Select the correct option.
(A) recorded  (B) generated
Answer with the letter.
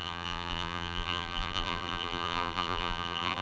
B